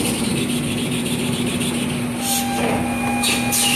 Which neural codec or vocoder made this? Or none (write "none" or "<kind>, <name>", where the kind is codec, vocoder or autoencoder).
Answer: none